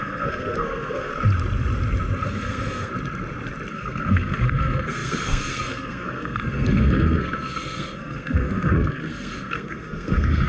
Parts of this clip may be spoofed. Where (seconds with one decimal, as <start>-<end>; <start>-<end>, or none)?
0.0-1.1; 2.4-2.9; 3.7-10.5